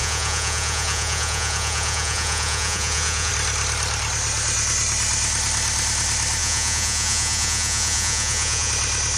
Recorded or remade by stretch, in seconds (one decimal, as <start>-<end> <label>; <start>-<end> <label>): 0.0-3.3 remade; 3.3-6.4 recorded; 6.4-8.7 remade; 8.7-9.2 recorded

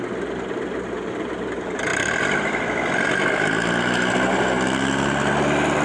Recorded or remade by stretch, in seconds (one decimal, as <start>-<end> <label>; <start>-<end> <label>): 0.0-5.8 recorded

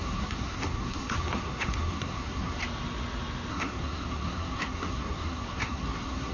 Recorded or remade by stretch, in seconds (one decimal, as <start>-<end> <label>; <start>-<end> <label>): 0.0-2.6 remade; 2.6-3.5 recorded; 3.5-6.3 remade